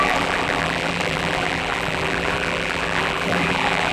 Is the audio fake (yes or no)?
yes